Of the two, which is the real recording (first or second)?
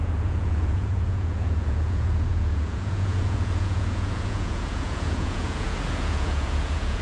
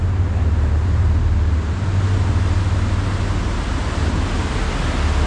second